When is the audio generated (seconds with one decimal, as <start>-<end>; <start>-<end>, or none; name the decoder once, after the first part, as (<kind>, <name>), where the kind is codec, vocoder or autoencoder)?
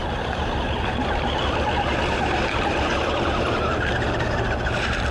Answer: 0.0-3.1 (vocoder, BigVGAN v2)